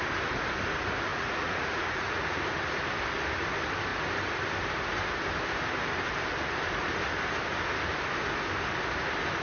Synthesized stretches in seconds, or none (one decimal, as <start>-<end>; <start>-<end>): 1.1-2.4